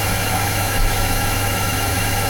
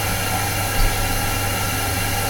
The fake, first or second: first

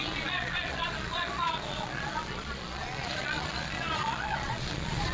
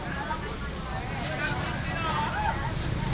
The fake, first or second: first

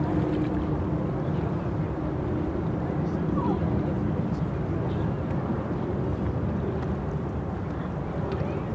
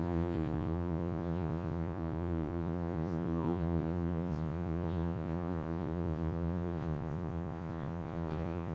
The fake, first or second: second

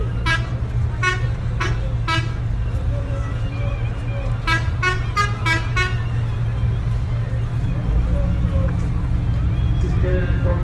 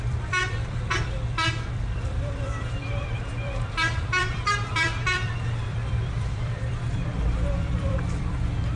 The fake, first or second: second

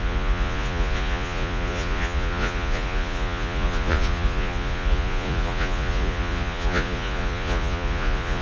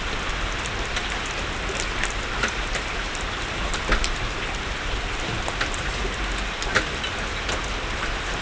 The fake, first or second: first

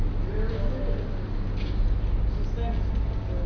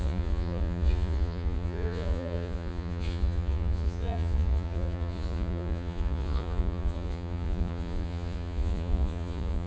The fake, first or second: second